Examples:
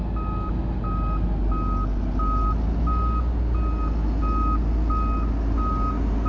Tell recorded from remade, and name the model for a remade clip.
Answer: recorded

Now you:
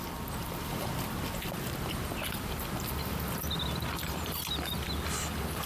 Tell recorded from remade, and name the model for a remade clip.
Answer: remade, vocoder, BigVGAN v2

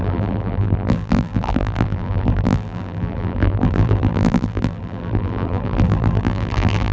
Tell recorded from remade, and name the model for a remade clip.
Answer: remade, vocoder, BigVGAN v2